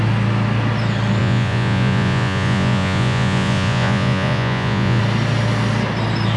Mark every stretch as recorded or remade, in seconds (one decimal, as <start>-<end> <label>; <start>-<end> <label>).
0.0-1.2 recorded; 1.2-5.0 remade; 5.0-6.4 recorded